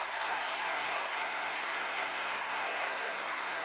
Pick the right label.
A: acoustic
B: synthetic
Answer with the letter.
B